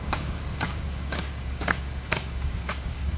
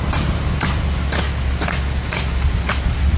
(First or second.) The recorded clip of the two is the second